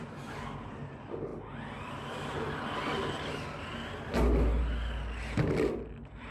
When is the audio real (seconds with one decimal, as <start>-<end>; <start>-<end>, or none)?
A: 0.0-6.3